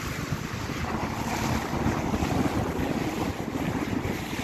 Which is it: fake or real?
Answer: real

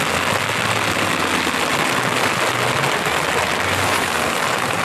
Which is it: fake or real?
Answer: real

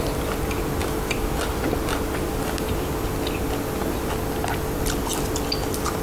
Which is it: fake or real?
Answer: real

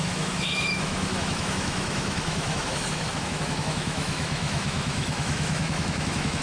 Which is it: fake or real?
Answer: fake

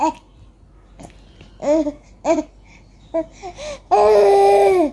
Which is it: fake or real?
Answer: real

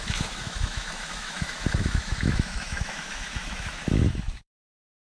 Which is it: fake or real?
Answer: fake